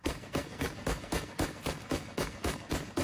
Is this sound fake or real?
fake